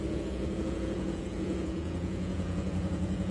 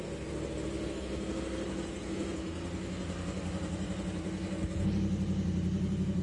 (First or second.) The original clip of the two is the second